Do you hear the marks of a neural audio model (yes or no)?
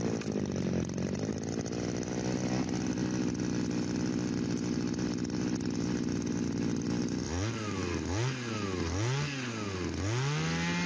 no